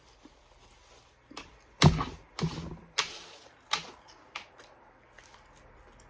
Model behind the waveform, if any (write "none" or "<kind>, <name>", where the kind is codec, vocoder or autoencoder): none